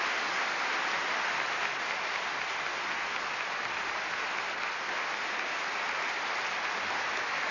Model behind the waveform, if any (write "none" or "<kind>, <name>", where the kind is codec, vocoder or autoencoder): none